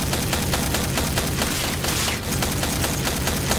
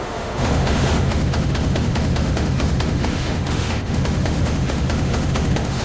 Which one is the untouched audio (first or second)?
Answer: first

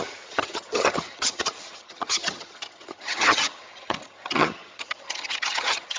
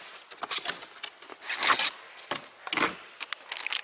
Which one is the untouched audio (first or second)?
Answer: second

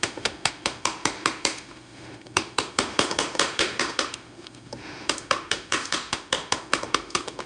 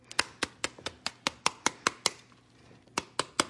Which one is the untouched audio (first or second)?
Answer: second